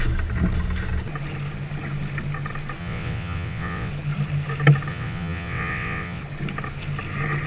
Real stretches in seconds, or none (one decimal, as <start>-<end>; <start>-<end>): 0.0-2.8; 3.9-4.9; 6.2-7.5